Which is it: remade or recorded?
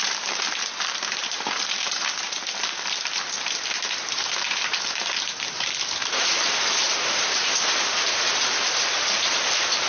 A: remade